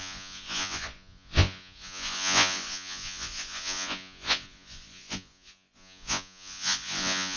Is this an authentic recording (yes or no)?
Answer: no